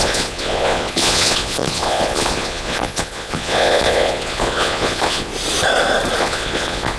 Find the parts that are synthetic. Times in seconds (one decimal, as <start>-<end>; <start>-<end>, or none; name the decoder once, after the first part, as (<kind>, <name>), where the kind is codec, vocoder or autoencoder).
0.0-5.3 (vocoder, Vocos); 6.2-7.0